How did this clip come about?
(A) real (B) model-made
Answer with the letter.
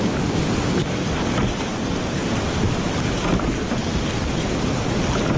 A